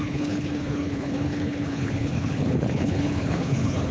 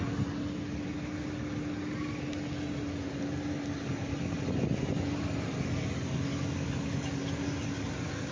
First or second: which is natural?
second